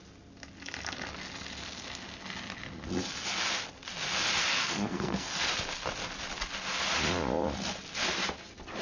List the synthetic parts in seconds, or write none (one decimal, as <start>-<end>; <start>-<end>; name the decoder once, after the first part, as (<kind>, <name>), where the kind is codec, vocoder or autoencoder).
4.6-5.5 (codec, SNAC)